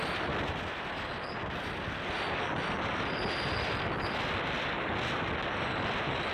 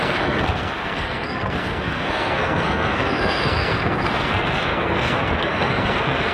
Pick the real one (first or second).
first